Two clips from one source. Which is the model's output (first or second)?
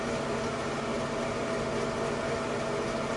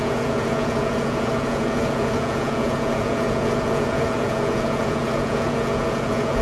second